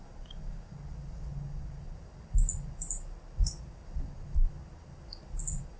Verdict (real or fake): real